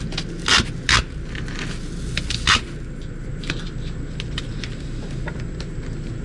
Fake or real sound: real